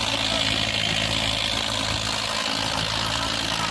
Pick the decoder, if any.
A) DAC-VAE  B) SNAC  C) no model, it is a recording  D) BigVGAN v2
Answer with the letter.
C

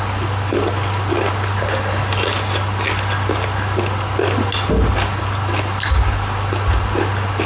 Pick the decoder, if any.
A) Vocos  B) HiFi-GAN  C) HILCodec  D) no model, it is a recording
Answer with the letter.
D